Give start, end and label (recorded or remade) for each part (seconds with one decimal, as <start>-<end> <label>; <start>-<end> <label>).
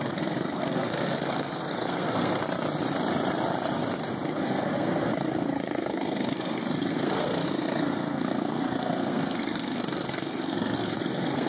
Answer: 0.0-2.4 remade; 2.4-4.3 recorded; 4.3-11.5 remade